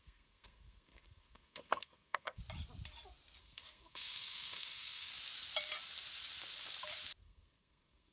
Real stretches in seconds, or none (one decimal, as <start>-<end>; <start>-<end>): 2.4-3.4; 5.1-7.2